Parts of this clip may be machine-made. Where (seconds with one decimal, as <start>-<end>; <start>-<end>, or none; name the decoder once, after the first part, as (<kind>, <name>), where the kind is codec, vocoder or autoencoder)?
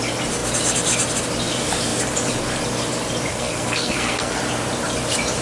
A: 3.3-4.4 (codec, SNAC)